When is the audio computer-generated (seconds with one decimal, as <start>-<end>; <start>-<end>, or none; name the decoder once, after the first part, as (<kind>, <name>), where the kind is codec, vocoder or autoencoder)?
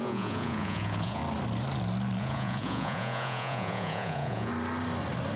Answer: 0.0-1.2 (vocoder, Vocos); 2.2-4.5